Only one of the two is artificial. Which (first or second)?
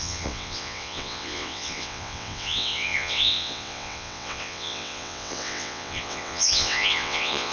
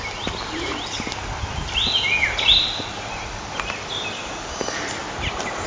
first